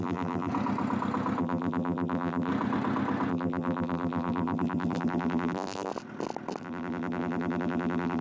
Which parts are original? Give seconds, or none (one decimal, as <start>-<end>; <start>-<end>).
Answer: 0.5-1.4; 2.5-3.3; 5.9-6.6

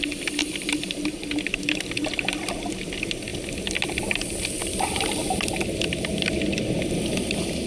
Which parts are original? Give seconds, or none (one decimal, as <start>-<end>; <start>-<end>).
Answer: 0.0-0.4; 1.2-4.6; 5.2-7.7

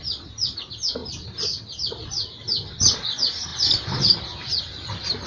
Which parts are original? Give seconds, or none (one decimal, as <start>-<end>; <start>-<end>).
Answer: 0.0-5.3